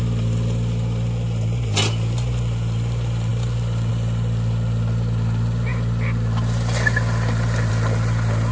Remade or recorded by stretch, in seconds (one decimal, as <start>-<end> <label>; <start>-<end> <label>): 0.0-8.5 recorded